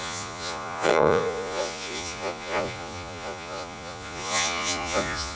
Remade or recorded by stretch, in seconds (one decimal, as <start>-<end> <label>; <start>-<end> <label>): 0.0-5.4 remade